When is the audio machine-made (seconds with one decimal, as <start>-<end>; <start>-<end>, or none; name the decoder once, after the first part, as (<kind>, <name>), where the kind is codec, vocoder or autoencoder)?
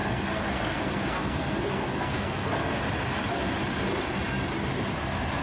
0.0-2.8 (codec, SNAC)